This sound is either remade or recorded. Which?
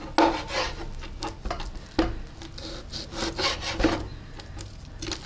recorded